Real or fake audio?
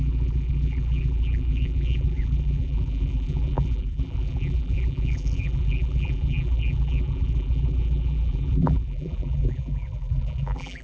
fake